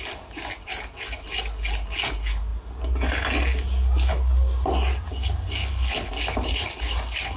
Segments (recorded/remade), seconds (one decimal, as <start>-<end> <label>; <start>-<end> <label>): 0.0-5.6 recorded; 5.6-6.1 remade; 6.1-7.4 recorded